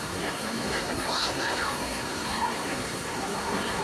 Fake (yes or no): yes